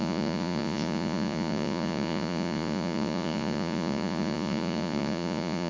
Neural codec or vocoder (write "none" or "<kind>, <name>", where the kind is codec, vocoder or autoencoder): vocoder, Vocos